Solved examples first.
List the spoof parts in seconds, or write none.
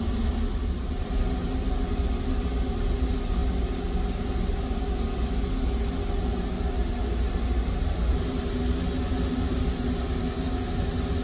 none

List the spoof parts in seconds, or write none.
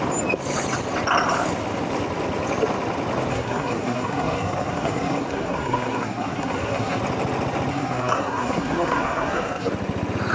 3.3-7.0 (codec, SNAC); 7.7-9.7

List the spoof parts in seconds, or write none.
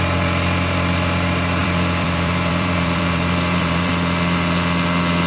1.6-3.9 (vocoder, BigVGAN v2)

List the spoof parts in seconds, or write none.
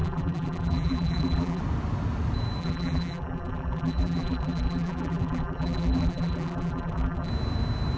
0.0-1.6 (vocoder, BigVGAN v2); 2.6-7.3